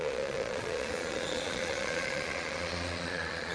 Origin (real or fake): fake